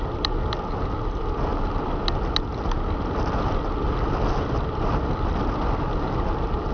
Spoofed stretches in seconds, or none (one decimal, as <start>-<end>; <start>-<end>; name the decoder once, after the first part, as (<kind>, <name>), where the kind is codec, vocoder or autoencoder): none